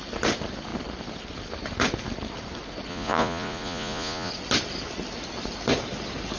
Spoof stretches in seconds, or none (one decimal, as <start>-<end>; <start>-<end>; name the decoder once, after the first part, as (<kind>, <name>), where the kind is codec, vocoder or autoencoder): 2.9-4.3 (vocoder, Vocos)